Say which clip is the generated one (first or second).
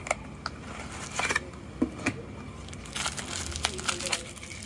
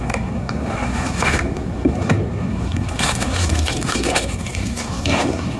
second